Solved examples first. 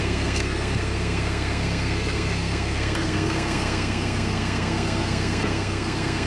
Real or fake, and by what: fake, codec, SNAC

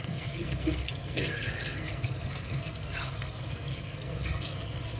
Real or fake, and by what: fake, codec, SNAC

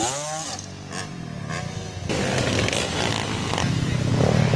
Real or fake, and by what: real